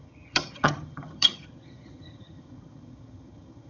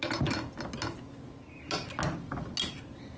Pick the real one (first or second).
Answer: second